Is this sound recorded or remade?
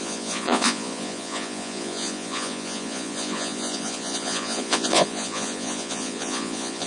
remade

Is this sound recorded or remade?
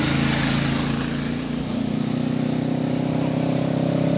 recorded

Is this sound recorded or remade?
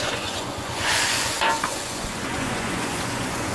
remade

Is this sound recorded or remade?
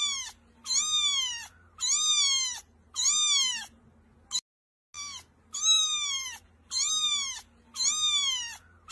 recorded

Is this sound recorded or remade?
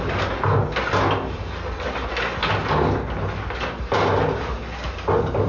recorded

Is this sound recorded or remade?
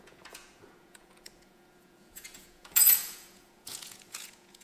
remade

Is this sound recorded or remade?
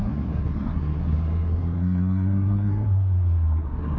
remade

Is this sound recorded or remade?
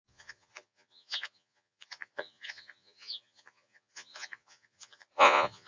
remade